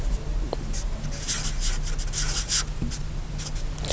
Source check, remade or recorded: recorded